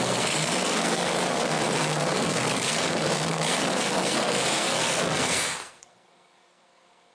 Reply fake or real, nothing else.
fake